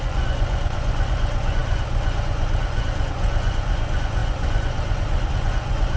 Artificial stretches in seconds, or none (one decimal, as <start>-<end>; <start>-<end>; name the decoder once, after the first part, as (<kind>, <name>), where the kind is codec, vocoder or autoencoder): 0.0-6.0 (vocoder, Vocos)